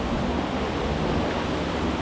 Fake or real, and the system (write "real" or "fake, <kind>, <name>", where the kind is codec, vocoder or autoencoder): real